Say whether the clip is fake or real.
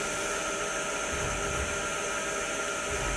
fake